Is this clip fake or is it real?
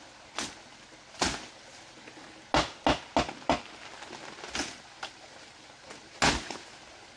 real